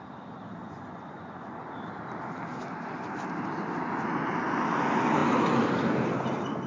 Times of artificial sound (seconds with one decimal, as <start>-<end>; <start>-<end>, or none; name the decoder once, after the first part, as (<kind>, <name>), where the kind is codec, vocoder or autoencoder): 0.6-1.7 (vocoder, Vocos)